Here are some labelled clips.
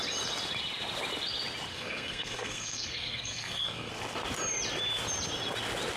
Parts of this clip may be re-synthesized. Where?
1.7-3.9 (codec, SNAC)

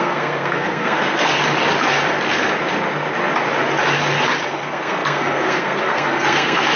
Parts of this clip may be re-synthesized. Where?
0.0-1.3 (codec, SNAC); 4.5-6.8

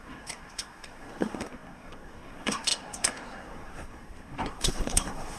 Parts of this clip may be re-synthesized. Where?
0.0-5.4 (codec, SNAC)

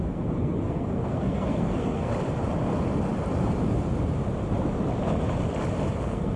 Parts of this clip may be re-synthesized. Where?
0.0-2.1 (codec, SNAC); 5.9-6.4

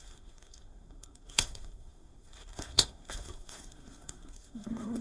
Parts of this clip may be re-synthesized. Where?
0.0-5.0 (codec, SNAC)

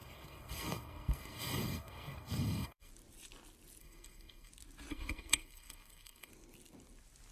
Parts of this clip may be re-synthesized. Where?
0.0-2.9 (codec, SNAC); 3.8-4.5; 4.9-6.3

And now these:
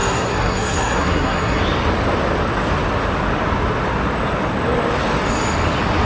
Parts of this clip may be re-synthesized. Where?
0.0-1.6 (codec, SNAC)

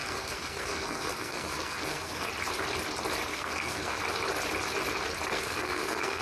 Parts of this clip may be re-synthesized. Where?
0.0-2.3 (codec, SNAC); 3.3-4.0; 5.3-6.2